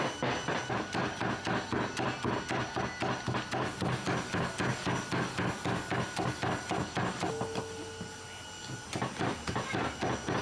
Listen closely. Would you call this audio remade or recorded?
recorded